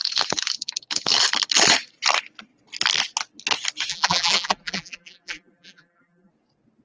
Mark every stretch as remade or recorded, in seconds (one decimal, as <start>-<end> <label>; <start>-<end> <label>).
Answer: 0.0-3.9 recorded; 3.9-6.3 remade; 6.3-6.8 recorded